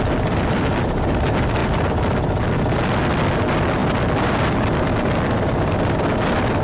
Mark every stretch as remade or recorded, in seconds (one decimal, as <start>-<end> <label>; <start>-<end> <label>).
0.0-6.6 recorded